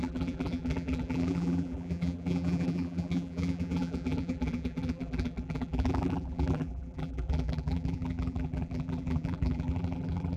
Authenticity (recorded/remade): remade